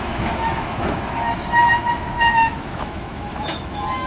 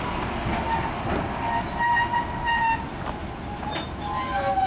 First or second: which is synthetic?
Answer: first